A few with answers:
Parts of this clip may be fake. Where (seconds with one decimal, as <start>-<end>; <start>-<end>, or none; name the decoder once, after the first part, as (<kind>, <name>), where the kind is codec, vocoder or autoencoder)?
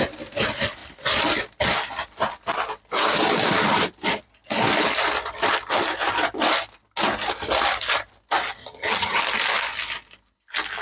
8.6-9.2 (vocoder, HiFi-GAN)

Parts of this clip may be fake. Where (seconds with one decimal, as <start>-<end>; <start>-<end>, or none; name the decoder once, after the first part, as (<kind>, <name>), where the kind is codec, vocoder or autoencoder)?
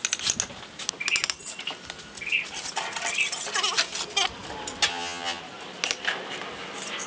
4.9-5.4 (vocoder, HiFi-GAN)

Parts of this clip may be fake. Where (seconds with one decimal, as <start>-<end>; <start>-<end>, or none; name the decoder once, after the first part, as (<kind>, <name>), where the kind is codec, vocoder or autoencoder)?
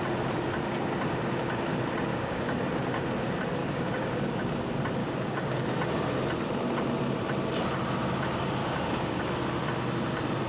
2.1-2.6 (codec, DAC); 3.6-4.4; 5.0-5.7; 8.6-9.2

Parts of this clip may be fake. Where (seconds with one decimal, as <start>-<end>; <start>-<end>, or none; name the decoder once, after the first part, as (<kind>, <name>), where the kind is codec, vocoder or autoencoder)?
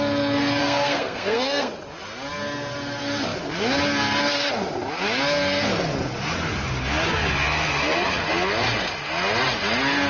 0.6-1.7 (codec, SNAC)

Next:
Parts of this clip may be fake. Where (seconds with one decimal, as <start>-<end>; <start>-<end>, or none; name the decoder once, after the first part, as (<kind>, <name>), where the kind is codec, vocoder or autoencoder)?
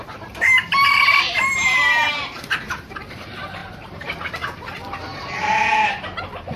0.0-5.1 (vocoder, BigVGAN v2); 5.8-6.6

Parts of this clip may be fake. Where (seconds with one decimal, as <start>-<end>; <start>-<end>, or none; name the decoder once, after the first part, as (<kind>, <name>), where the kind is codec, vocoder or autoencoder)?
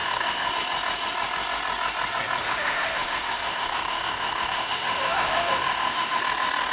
0.0-0.5 (autoencoder, DAC-VAE); 2.4-6.2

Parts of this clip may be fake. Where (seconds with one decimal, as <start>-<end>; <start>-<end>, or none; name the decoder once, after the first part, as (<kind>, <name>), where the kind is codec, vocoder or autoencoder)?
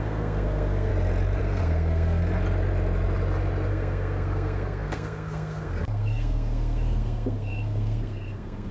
0.0-0.9 (codec, SNAC); 1.4-2.2; 3.7-8.7